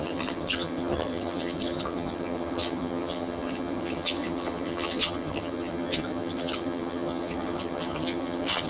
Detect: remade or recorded remade